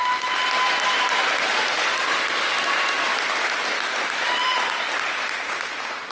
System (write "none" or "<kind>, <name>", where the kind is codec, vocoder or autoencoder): none